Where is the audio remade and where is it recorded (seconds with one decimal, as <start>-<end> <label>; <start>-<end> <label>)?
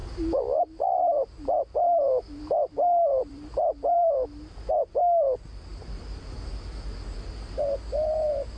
0.0-2.4 remade; 2.4-2.9 recorded; 2.9-4.7 remade; 4.7-8.6 recorded